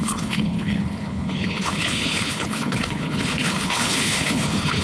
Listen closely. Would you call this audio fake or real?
fake